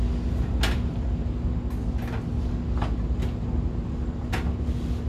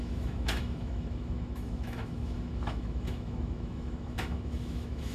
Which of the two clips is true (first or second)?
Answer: first